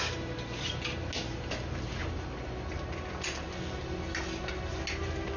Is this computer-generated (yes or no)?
no